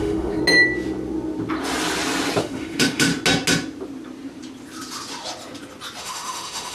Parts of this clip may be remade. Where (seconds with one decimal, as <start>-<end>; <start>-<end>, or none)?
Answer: 0.0-0.4; 2.4-3.1; 6.0-6.7